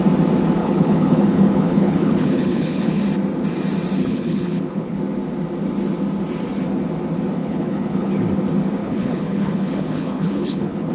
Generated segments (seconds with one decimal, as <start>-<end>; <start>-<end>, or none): 0.6-3.0; 4.0-5.0; 7.4-8.1; 8.8-10.9